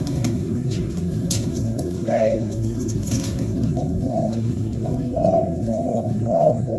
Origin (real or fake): fake